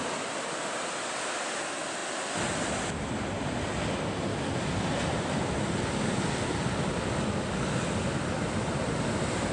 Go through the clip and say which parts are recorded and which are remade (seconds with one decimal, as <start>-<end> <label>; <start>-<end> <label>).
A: 0.0-9.5 recorded

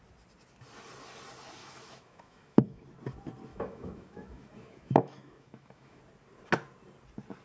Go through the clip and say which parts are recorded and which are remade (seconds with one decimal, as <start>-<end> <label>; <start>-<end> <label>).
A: 0.0-1.6 recorded; 1.6-2.8 remade; 2.8-3.5 recorded; 3.5-6.0 remade; 6.0-7.4 recorded

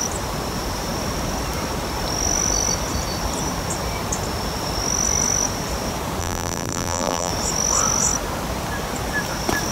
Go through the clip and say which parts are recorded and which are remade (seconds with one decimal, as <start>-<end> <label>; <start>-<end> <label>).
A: 0.0-6.2 recorded; 6.2-7.3 remade; 7.3-9.7 recorded

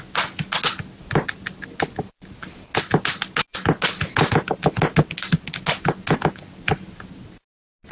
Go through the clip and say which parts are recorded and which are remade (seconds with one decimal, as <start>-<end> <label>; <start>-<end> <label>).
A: 0.0-7.9 recorded